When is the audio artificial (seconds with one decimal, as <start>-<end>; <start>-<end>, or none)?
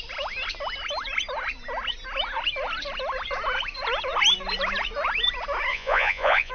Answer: 5.7-6.5